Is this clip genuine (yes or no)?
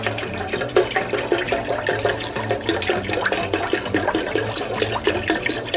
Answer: yes